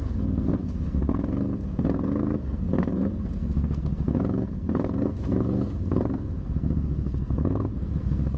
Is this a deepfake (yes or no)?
yes